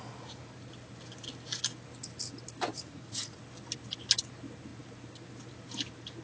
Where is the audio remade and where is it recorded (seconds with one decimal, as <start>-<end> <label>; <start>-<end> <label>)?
0.0-2.7 recorded; 2.7-3.4 remade; 3.4-6.2 recorded